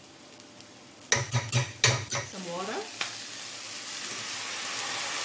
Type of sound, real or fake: real